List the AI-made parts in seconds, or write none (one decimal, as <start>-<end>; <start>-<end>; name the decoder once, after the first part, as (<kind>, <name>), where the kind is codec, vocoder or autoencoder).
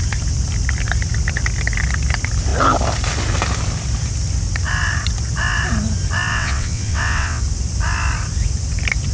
6.3-7.4 (vocoder, WaveNeXt)